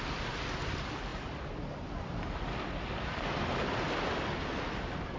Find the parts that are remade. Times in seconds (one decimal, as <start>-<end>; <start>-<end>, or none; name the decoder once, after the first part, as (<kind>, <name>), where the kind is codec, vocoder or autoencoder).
none